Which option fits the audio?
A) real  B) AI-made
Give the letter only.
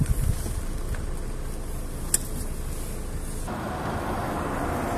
A